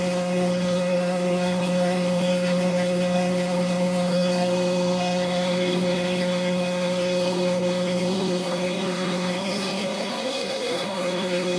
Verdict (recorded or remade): remade